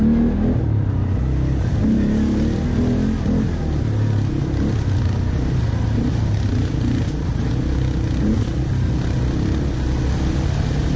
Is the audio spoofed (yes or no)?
no